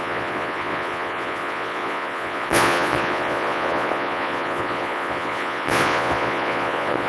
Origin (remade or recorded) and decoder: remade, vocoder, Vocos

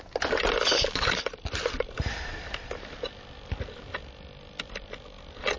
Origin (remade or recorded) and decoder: recorded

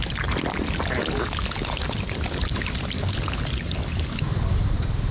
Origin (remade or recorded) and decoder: recorded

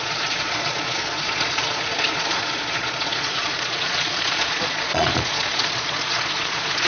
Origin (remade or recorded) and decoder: remade, vocoder, Vocos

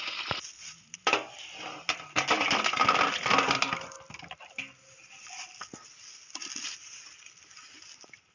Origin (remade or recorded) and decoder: recorded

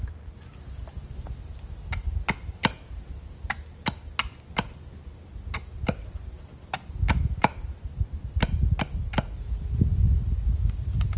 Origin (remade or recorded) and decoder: recorded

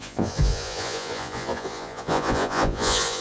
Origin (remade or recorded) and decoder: remade, vocoder, Vocos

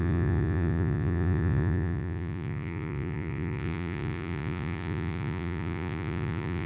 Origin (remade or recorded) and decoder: remade, vocoder, Vocos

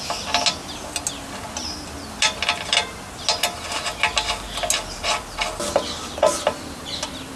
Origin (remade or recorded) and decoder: recorded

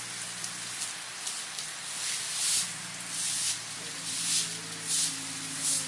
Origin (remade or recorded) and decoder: recorded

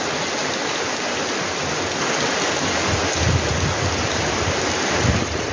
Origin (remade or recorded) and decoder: recorded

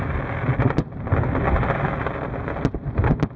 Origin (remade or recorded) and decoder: recorded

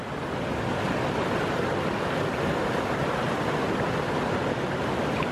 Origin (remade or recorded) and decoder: recorded